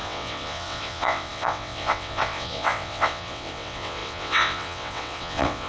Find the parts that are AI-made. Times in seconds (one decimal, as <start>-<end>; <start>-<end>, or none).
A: 0.0-5.7

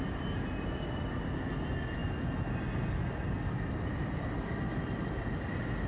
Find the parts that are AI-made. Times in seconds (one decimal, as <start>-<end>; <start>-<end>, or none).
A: none

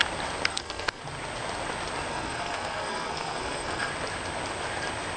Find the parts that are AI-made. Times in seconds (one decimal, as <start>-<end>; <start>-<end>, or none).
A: 0.5-1.0; 2.1-3.9

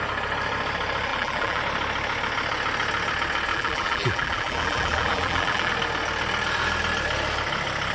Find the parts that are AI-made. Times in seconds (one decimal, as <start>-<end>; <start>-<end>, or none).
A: 1.1-1.6; 3.5-5.7

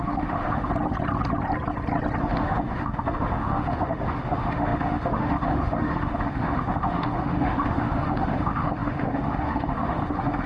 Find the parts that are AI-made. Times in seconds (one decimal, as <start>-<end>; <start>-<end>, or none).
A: 0.0-0.7; 2.2-10.5

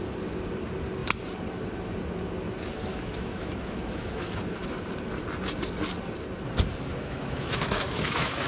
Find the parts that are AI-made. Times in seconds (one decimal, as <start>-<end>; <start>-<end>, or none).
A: 2.9-4.4; 6.9-8.5